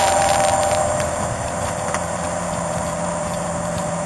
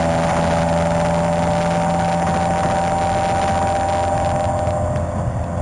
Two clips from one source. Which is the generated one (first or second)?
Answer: first